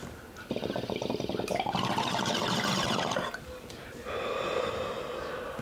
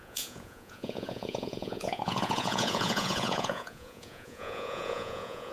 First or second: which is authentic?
first